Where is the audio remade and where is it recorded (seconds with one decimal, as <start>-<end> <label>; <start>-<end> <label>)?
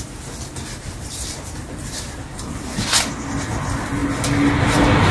0.0-5.1 recorded